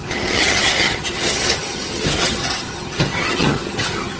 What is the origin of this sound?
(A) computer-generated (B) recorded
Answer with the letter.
A